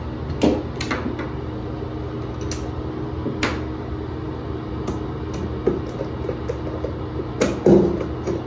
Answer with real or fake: real